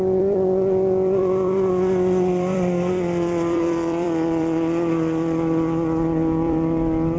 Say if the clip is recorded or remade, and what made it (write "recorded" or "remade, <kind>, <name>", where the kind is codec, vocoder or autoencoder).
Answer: remade, vocoder, BigVGAN v2